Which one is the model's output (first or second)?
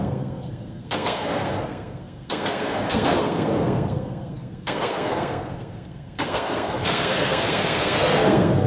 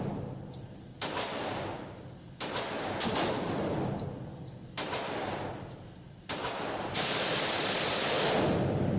first